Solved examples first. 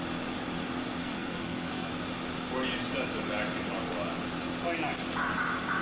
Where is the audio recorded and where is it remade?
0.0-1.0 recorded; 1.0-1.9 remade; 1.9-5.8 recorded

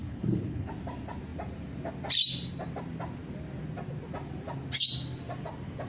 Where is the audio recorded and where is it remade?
0.0-0.7 remade; 0.7-5.9 recorded

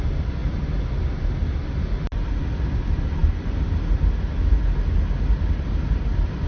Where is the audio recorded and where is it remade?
0.0-6.5 recorded

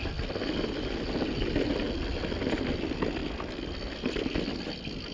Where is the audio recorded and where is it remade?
0.0-5.1 recorded